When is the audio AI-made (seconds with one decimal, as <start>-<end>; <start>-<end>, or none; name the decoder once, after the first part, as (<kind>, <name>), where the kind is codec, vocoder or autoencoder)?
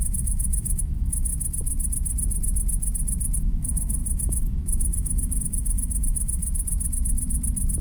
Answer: 0.0-1.3 (autoencoder, DAC-VAE); 3.4-6.4